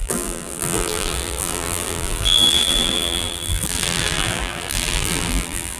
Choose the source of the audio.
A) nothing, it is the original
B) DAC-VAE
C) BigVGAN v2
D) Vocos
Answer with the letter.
C